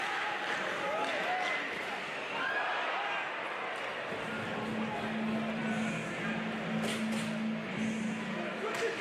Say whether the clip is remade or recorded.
recorded